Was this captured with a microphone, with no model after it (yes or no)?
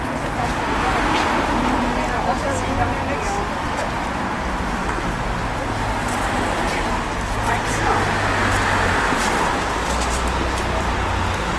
yes